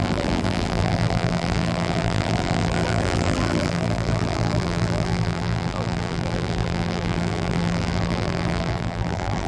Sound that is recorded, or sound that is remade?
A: remade